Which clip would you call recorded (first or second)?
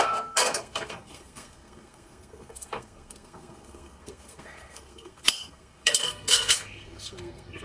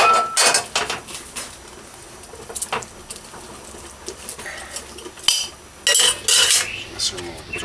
second